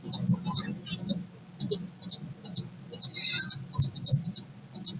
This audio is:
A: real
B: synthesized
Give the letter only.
A